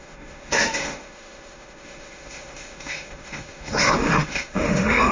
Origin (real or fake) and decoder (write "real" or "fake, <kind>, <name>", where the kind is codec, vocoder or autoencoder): fake, autoencoder, DAC-VAE